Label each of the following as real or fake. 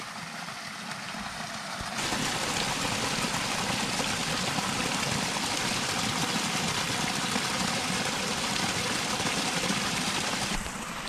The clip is real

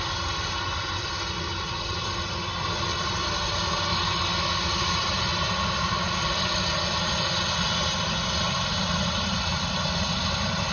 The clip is real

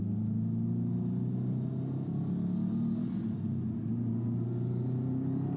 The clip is real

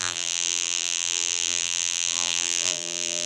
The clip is fake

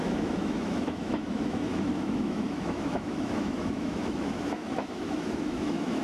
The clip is fake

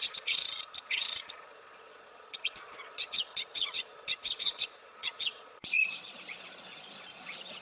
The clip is fake